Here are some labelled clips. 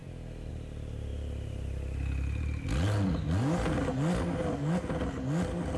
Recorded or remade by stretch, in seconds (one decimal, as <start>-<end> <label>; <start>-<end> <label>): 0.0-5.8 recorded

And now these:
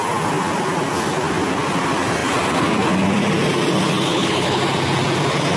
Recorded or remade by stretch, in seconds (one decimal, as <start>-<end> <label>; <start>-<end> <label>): 0.0-4.1 recorded; 4.1-4.6 remade; 4.6-5.6 recorded

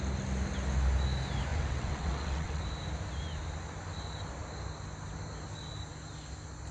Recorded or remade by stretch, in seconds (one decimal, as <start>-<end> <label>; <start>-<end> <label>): 0.0-1.5 recorded; 1.5-2.6 remade; 2.6-6.7 recorded

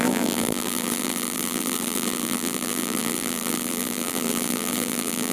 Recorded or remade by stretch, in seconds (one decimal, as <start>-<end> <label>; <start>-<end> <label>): 0.0-5.3 remade

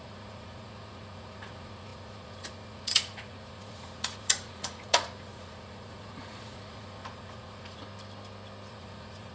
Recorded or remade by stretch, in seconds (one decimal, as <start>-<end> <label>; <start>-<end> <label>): 0.0-7.8 remade; 7.8-8.7 recorded; 8.7-9.3 remade

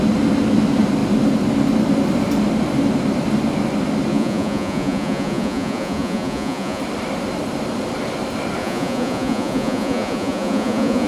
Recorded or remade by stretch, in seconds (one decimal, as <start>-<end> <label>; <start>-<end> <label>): 0.0-4.1 recorded; 4.1-6.8 remade; 6.8-8.6 recorded; 8.6-11.1 remade

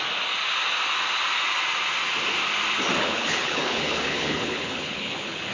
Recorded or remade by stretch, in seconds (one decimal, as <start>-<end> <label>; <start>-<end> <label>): 0.0-3.0 recorded; 3.0-5.5 remade